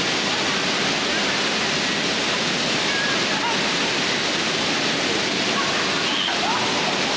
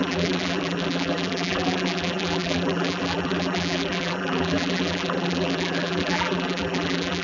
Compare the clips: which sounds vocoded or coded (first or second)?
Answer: second